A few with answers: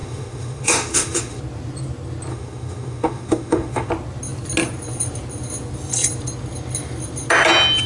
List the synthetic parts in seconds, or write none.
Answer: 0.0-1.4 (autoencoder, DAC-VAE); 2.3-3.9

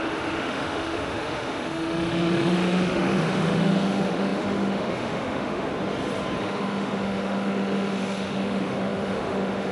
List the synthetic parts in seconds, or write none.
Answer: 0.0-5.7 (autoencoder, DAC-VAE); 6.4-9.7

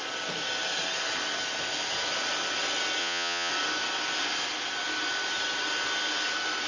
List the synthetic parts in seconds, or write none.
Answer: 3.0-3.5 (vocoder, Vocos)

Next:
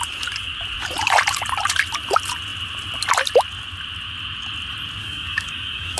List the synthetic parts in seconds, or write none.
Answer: 5.0-6.0 (codec, DAC)

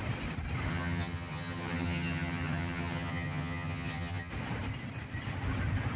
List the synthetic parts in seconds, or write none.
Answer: 0.7-4.3 (vocoder, HiFi-GAN)

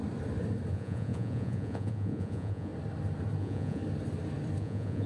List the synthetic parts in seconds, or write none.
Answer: 0.7-2.7 (vocoder, Vocos); 3.4-3.8; 4.6-5.1

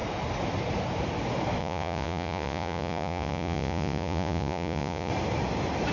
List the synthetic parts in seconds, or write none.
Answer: 1.6-5.1 (vocoder, Vocos)